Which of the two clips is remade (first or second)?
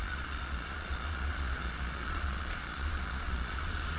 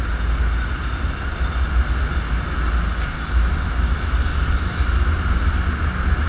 first